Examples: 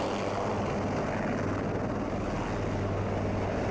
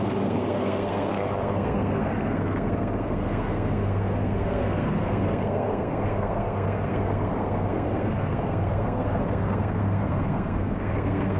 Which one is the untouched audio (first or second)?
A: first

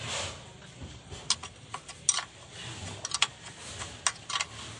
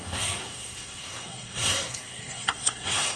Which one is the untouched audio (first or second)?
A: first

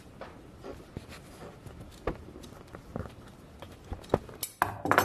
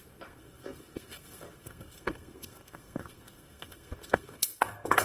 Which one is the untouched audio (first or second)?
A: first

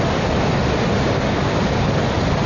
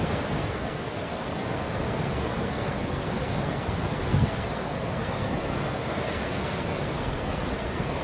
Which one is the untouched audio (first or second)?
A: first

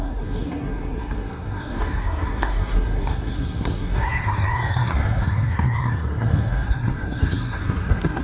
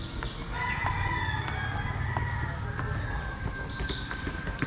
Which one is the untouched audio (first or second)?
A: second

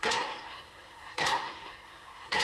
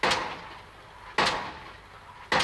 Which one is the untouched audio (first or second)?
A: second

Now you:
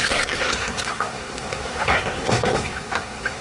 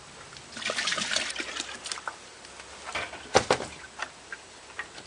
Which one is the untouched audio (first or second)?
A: second